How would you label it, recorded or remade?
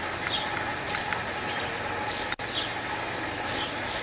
recorded